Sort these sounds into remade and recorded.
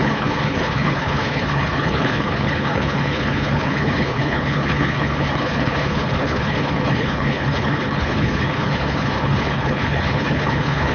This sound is remade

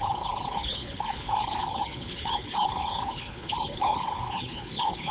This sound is remade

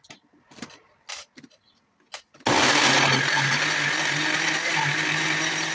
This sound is recorded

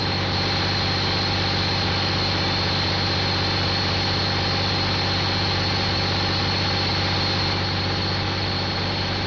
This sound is recorded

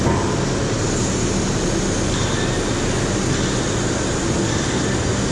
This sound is recorded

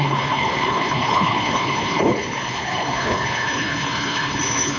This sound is remade